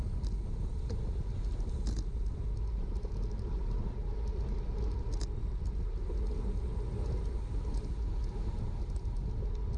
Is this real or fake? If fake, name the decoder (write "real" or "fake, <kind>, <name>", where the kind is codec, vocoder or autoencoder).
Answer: real